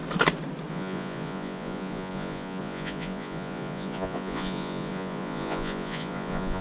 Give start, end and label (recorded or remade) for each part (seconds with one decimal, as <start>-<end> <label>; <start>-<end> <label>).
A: 0.0-0.7 recorded; 0.7-6.6 remade